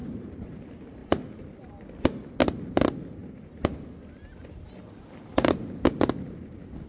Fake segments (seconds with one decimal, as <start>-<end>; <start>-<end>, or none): 0.0-0.6; 1.0-1.7